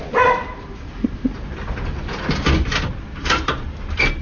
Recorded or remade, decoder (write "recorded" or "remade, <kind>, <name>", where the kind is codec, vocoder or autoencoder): recorded